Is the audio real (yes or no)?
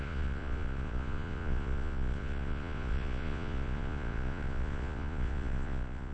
no